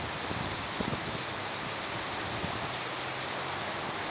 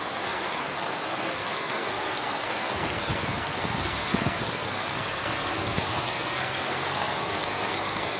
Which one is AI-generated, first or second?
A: second